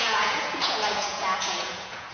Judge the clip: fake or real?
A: fake